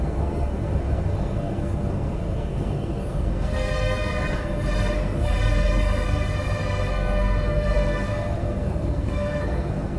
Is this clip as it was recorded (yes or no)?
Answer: no